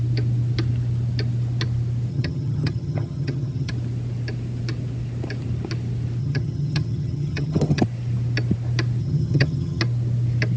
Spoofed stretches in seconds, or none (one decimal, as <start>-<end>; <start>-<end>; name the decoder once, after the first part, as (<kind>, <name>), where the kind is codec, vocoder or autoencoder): 2.1-3.7 (vocoder, HiFi-GAN); 6.2-7.8; 9.0-9.8